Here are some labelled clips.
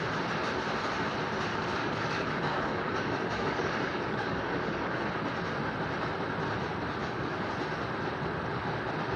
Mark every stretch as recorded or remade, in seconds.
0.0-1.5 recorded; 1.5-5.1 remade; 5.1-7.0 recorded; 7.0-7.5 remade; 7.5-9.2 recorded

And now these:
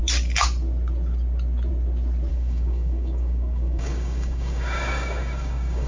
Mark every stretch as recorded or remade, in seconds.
0.0-2.3 recorded; 2.3-5.9 remade

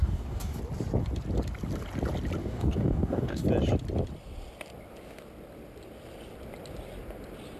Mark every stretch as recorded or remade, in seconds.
0.0-0.6 remade; 0.6-2.4 recorded; 2.4-3.4 remade; 3.4-7.6 recorded

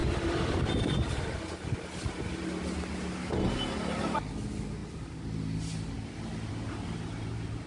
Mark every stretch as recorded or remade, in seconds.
0.0-7.7 recorded

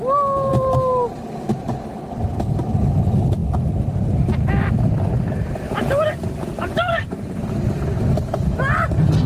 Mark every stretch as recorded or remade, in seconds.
0.0-9.3 recorded